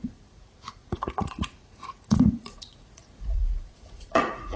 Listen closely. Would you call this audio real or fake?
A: fake